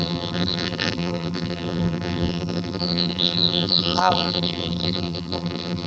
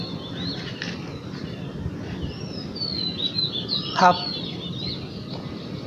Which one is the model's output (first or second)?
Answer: first